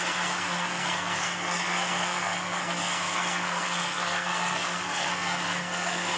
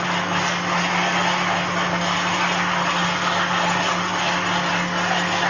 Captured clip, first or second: second